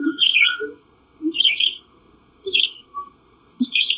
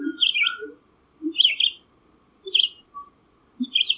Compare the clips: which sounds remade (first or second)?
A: first